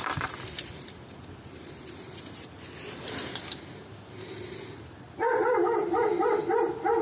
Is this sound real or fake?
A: real